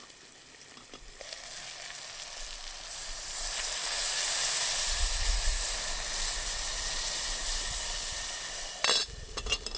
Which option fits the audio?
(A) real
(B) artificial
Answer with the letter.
A